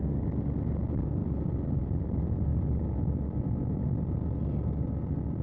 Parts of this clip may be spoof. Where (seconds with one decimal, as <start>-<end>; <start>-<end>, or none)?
none